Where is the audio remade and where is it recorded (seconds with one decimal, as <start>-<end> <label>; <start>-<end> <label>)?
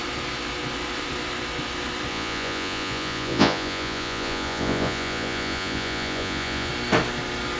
0.0-2.1 recorded; 2.1-6.7 remade; 6.7-7.6 recorded